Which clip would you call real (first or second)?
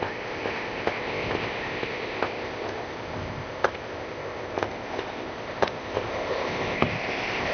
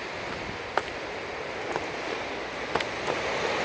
second